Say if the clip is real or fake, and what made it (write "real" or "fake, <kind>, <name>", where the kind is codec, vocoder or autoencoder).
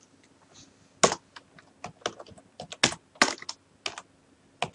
real